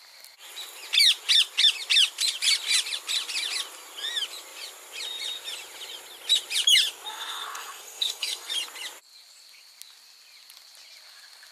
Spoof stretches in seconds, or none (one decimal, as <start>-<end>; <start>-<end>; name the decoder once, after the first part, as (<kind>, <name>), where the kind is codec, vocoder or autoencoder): 7.1-8.5 (codec, SNAC)